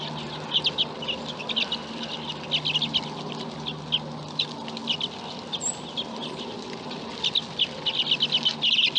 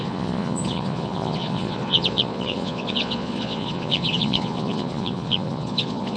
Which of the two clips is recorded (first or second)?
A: first